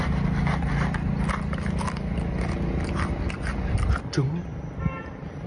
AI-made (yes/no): no